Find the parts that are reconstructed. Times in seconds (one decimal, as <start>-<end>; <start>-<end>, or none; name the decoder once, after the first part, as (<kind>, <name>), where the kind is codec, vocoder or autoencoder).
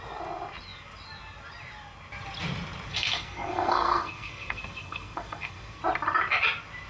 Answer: 2.9-5.8 (codec, SNAC)